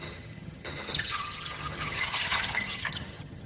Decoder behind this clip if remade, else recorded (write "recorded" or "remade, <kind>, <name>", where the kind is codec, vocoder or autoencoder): remade, vocoder, HiFi-GAN